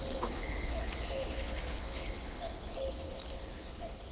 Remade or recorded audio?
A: remade